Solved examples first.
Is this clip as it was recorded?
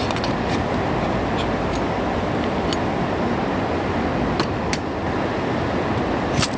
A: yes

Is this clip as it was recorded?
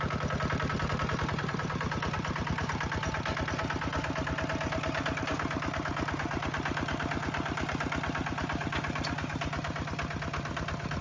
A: yes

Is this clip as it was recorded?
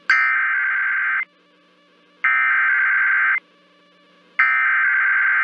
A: yes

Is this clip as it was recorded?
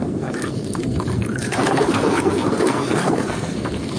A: no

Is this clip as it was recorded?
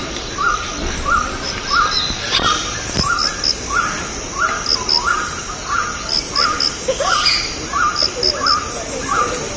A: yes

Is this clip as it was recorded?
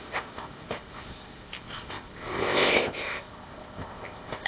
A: no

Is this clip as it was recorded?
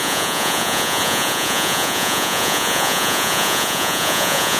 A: no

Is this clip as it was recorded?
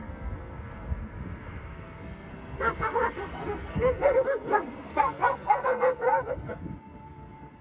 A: no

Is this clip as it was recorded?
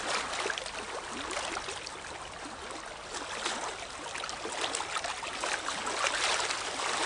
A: yes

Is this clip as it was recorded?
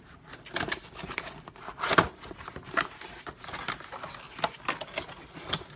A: yes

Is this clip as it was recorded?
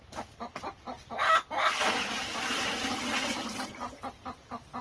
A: yes